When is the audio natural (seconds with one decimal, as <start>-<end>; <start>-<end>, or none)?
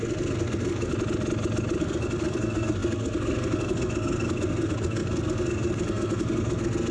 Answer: 0.9-1.8